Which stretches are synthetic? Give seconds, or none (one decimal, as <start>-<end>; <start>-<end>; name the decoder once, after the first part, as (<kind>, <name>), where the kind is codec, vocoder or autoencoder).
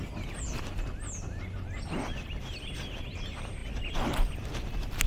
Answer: none